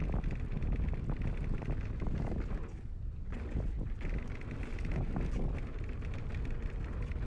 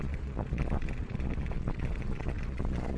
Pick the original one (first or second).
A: first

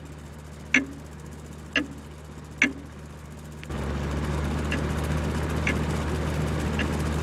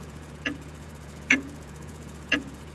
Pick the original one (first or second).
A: first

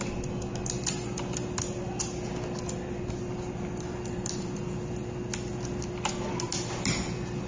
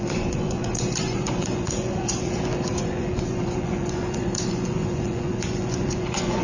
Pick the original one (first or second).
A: first